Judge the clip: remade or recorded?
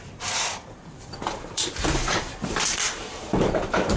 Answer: remade